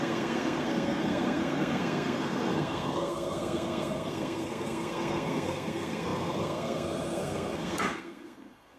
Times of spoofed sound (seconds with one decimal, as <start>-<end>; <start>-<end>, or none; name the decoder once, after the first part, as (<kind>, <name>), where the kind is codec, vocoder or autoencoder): 0.0-8.8 (codec, SNAC)